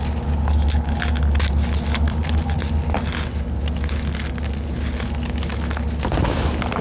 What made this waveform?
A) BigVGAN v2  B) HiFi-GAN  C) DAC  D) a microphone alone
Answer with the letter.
D